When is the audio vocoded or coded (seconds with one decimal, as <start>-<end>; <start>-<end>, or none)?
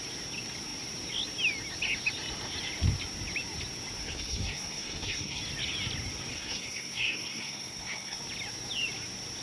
4.0-5.4; 6.3-8.2